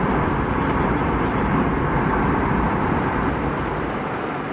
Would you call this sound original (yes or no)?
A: no